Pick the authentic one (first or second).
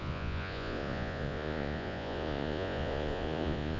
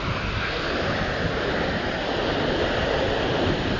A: second